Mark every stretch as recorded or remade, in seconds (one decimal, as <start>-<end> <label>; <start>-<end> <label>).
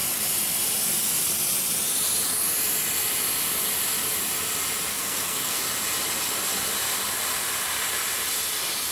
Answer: 0.0-4.9 recorded; 4.9-5.6 remade; 5.6-8.9 recorded